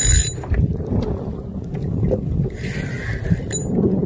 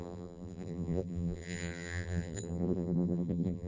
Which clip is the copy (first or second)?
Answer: second